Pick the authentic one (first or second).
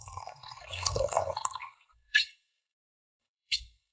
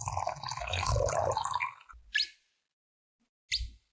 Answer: second